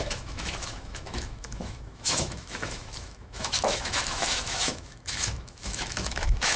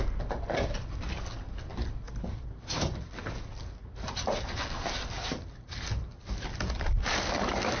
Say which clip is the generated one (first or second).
first